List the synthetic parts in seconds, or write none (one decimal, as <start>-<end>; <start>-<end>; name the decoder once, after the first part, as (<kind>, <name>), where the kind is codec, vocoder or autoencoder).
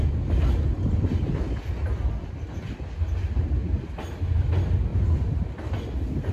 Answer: 0.7-2.1 (vocoder, BigVGAN v2); 4.9-6.3